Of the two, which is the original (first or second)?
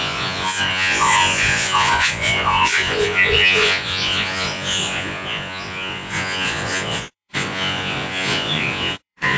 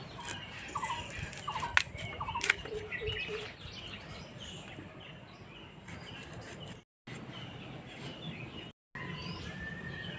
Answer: second